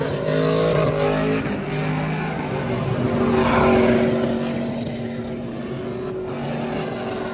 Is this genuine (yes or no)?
yes